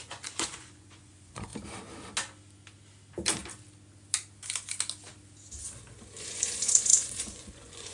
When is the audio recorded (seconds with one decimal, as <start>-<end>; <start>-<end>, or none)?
1.5-6.2